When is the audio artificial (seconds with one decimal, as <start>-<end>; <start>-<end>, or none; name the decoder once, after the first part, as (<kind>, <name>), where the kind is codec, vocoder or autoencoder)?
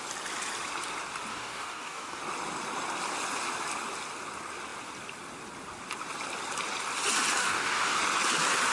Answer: 1.3-2.2 (codec, DAC); 7.4-8.0